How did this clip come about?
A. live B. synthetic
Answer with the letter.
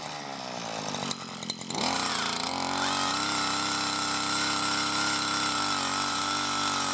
A